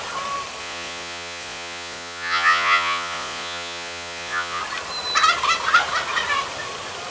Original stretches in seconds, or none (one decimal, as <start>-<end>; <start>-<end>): 0.0-0.6; 4.6-7.1